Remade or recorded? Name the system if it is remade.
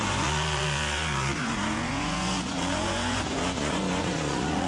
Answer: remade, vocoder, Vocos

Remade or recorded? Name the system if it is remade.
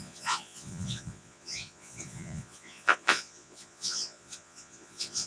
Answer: remade, vocoder, Vocos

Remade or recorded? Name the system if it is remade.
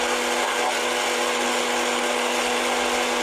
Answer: recorded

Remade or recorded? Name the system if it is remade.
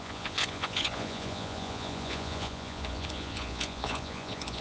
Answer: remade, vocoder, Vocos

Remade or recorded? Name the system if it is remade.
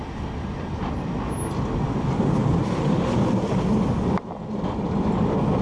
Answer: recorded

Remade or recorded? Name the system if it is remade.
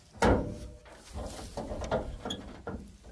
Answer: recorded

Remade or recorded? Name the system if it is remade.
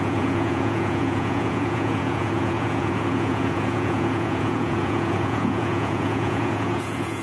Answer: remade, vocoder, Vocos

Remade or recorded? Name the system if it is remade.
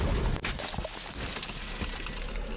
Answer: recorded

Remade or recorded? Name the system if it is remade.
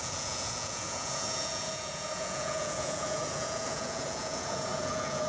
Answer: remade, vocoder, Vocos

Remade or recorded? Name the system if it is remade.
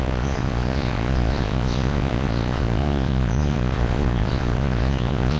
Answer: remade, vocoder, Vocos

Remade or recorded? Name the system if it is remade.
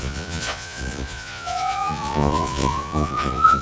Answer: remade, vocoder, Vocos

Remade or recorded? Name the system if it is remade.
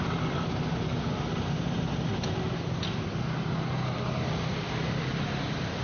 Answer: recorded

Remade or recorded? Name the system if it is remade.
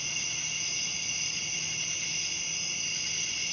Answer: recorded